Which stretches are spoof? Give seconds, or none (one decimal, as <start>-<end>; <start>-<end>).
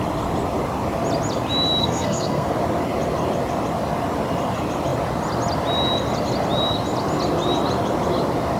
1.8-2.5